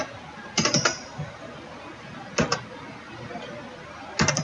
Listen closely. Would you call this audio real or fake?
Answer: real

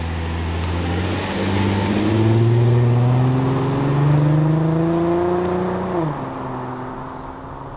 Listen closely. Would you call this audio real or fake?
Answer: real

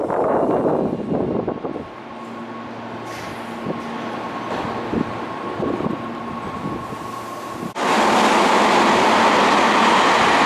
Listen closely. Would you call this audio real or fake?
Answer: real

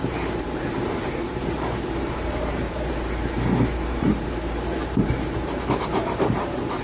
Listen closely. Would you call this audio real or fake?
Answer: fake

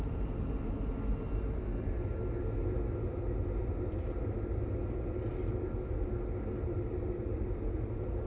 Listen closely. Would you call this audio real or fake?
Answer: real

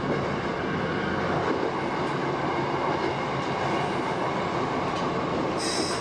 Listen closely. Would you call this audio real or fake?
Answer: real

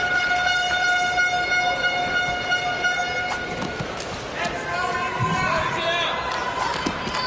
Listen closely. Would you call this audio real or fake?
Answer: real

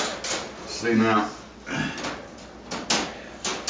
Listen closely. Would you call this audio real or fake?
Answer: real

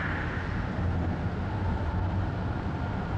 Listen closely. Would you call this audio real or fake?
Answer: real